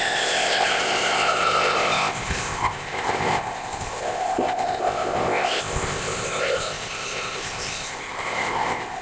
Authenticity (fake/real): fake